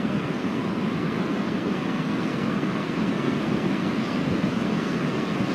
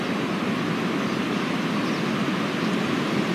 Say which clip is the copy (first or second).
first